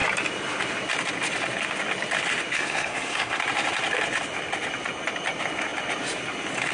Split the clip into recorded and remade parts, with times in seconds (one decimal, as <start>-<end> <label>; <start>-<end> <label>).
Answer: 0.0-2.6 recorded; 2.6-3.4 remade; 3.4-6.7 recorded

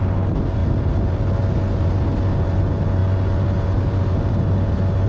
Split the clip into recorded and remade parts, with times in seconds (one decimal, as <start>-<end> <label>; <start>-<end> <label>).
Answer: 0.0-5.1 recorded